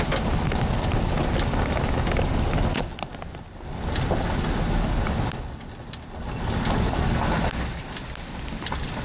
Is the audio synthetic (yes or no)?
no